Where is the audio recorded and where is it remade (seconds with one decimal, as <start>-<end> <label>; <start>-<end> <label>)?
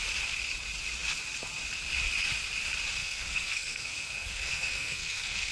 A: 0.0-3.0 recorded; 3.0-5.5 remade